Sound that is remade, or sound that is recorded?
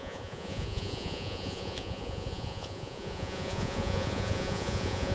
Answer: remade